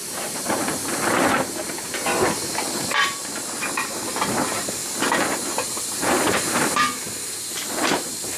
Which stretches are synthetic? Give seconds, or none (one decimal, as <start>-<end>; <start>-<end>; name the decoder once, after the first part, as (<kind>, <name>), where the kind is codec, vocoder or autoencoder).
0.0-8.4 (vocoder, BigVGAN v2)